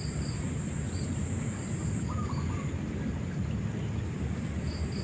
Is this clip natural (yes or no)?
yes